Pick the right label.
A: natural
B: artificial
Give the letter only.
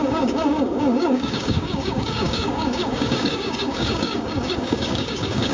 B